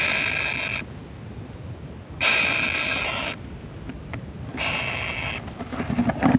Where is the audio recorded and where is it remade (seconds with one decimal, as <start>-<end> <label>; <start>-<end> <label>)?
0.0-6.4 recorded